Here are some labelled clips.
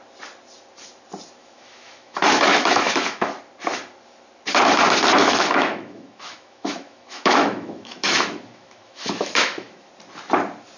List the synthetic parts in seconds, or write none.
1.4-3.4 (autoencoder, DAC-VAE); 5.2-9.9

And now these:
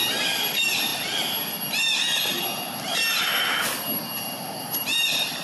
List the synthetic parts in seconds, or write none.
none

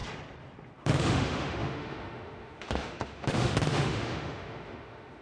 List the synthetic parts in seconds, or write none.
0.8-5.2 (autoencoder, DAC-VAE)

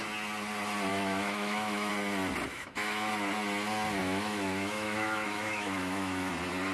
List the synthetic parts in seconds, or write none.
0.9-1.9 (autoencoder, DAC-VAE); 2.5-3.1; 4.0-6.3